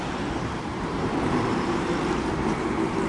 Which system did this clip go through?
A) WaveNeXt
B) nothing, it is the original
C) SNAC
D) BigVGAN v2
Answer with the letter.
D